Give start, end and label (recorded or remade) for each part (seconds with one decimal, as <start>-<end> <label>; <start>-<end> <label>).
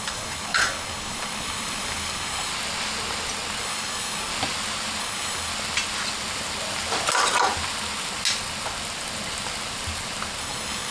0.0-2.5 remade; 2.5-3.6 recorded; 3.6-4.3 remade; 4.3-5.0 recorded; 5.0-5.5 remade; 5.5-10.4 recorded; 10.4-10.9 remade